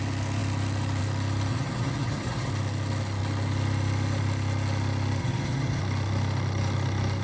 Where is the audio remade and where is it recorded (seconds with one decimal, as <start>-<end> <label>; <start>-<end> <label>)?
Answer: 0.0-1.5 recorded; 1.5-2.5 remade; 2.5-5.2 recorded; 5.2-5.8 remade; 5.8-7.2 recorded